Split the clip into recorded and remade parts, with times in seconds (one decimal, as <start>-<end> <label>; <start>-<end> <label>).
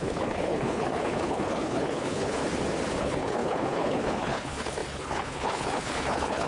0.0-2.4 remade; 2.4-3.0 recorded; 3.0-6.5 remade